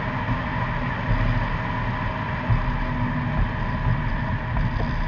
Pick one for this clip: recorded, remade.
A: recorded